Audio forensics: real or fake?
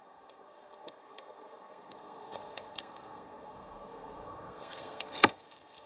fake